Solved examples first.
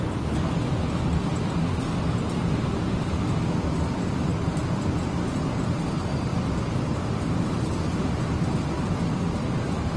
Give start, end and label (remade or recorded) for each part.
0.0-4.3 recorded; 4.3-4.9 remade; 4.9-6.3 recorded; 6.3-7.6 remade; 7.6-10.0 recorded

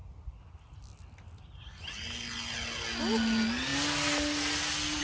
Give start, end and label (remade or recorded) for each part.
0.0-5.0 recorded

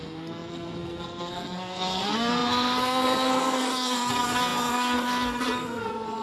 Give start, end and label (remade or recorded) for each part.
0.0-6.2 remade

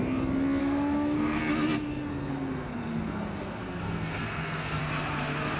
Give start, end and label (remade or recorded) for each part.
0.0-0.6 recorded; 0.6-1.4 remade; 1.4-2.1 recorded; 2.1-4.8 remade; 4.8-5.6 recorded

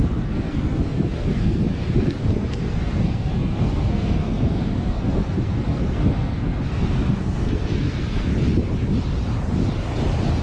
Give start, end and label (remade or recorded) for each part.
0.0-8.3 remade; 8.3-10.4 recorded

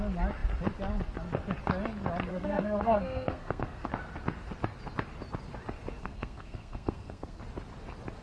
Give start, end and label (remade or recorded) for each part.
0.0-2.3 recorded; 2.3-3.9 remade; 3.9-6.0 recorded; 6.0-7.4 remade; 7.4-8.2 recorded

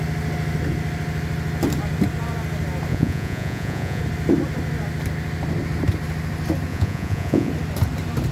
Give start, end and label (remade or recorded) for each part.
0.0-2.9 recorded; 2.9-4.0 remade; 4.0-6.7 recorded; 6.7-7.5 remade; 7.5-8.3 recorded

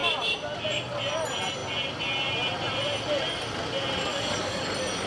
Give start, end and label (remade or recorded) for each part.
0.0-4.1 recorded; 4.1-4.6 remade; 4.6-5.1 recorded